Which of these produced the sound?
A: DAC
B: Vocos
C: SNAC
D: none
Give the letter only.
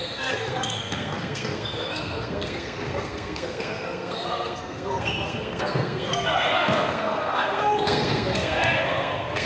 C